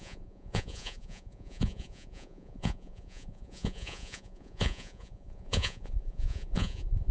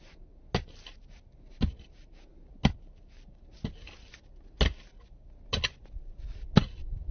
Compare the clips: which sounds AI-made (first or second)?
first